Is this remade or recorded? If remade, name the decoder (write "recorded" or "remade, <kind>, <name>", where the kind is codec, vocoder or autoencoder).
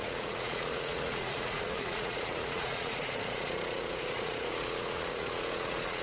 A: remade, vocoder, Vocos